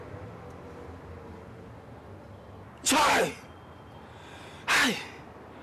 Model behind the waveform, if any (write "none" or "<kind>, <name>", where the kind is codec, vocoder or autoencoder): none